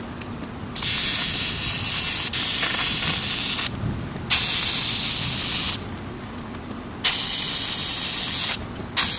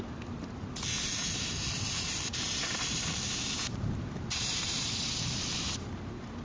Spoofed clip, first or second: second